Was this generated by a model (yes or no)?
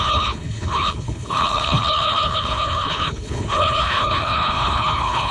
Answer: yes